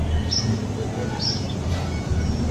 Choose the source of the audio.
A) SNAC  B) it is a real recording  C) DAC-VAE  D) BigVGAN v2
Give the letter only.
B